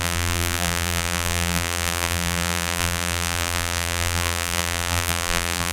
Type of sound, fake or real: fake